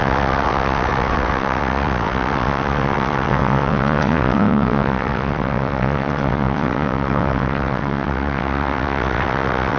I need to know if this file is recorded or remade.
remade